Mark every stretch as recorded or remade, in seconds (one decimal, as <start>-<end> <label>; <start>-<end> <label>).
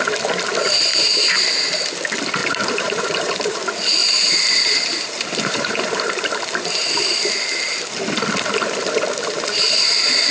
0.0-2.4 recorded; 2.4-3.6 remade; 3.6-4.0 recorded; 4.0-6.4 remade; 6.4-10.3 recorded